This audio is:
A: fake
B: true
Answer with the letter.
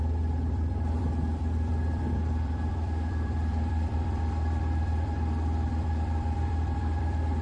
A